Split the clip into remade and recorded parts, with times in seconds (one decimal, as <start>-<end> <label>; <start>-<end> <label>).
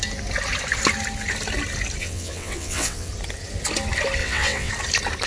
0.0-2.0 recorded; 2.0-3.1 remade; 3.1-4.2 recorded; 4.2-4.7 remade; 4.7-5.3 recorded